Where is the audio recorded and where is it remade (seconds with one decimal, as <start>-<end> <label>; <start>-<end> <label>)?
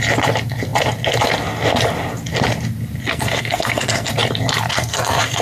0.0-3.1 recorded; 3.1-4.1 remade; 4.1-4.7 recorded; 4.7-5.4 remade